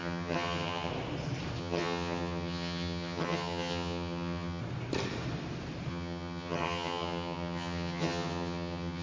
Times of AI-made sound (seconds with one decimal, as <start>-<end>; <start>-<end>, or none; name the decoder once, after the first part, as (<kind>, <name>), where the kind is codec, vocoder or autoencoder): 0.0-0.9 (vocoder, HiFi-GAN); 1.6-4.6; 5.9-9.0